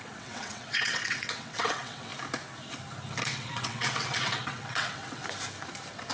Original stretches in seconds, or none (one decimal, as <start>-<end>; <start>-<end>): 2.1-3.2; 5.2-6.1